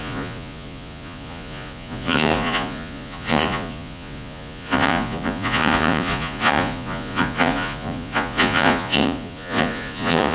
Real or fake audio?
fake